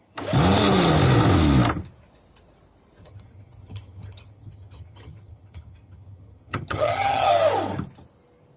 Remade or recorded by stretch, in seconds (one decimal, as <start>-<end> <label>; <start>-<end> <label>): 0.0-3.0 recorded; 3.0-7.3 remade; 7.3-8.6 recorded